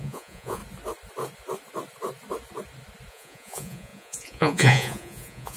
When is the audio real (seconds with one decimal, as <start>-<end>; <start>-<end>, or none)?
0.6-3.1